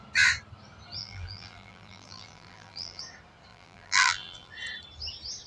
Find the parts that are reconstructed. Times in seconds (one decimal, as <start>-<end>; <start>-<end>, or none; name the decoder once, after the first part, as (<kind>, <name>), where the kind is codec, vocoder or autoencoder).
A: 1.0-3.0 (vocoder, BigVGAN v2); 3.5-4.5